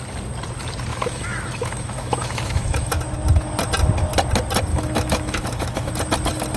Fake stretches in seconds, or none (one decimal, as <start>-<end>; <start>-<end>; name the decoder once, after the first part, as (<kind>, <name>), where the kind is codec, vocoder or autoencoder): 0.9-3.0 (autoencoder, DAC-VAE); 4.7-5.9